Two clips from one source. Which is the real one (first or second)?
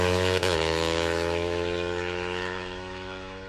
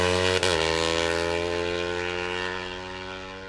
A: second